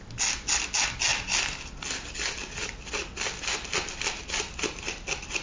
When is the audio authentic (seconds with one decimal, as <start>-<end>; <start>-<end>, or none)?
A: 0.0-5.4